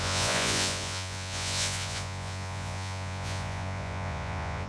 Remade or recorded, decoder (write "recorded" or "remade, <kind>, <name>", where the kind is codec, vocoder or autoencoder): remade, vocoder, Vocos